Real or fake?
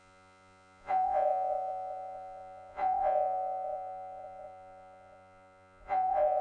fake